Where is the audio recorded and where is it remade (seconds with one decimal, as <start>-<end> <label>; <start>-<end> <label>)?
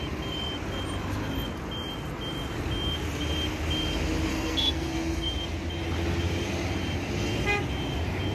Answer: 0.0-4.3 recorded; 4.3-5.3 remade; 5.3-8.3 recorded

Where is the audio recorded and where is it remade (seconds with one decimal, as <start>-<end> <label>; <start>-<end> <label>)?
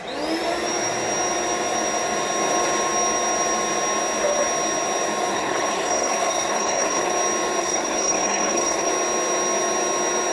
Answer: 0.0-5.3 recorded; 5.3-7.1 remade; 7.1-7.6 recorded; 7.6-8.9 remade; 8.9-10.3 recorded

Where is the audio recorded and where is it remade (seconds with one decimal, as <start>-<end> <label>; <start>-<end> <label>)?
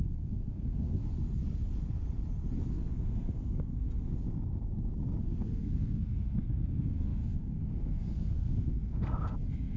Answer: 0.0-1.0 remade; 1.0-2.7 recorded; 2.7-4.1 remade; 4.1-5.2 recorded; 5.2-9.8 remade